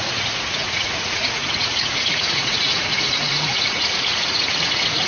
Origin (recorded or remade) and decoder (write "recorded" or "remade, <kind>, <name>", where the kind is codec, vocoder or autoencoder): remade, vocoder, Vocos